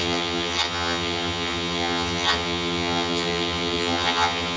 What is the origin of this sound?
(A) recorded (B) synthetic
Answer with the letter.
B